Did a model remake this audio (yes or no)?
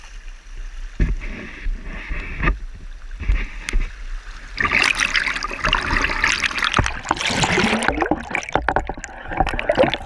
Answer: no